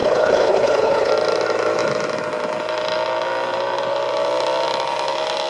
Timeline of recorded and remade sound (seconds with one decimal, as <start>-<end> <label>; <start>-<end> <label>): 0.0-1.1 remade; 1.1-5.5 recorded